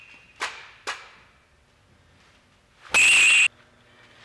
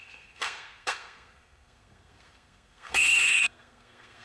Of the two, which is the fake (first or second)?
second